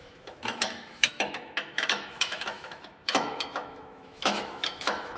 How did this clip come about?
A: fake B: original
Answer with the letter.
A